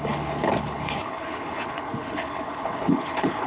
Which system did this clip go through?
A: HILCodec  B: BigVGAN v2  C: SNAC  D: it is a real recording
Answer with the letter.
A